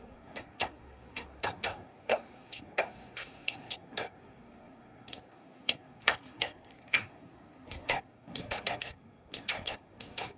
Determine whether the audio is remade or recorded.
remade